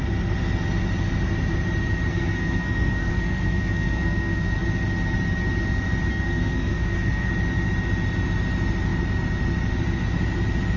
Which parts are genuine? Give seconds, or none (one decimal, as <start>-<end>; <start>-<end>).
0.0-2.1; 4.6-6.1; 7.3-10.8